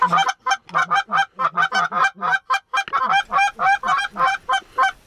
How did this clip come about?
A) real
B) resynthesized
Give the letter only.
A